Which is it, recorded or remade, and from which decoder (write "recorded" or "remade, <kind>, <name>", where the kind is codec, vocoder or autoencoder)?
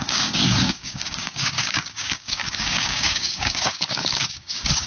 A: remade, codec, DAC